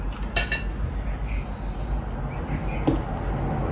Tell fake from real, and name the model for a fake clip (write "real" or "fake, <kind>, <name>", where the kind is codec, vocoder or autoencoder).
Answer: real